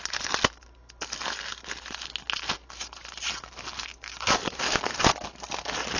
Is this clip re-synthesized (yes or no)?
no